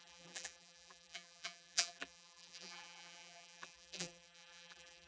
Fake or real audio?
fake